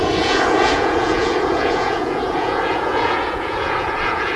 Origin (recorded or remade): remade